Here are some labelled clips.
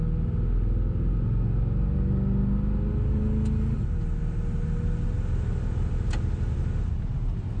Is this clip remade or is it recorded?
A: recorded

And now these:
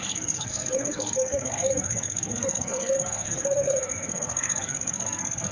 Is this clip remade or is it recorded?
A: remade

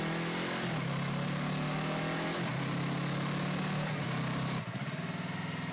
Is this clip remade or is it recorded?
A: recorded